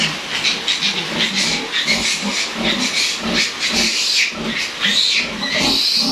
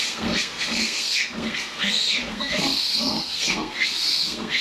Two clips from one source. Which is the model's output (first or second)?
second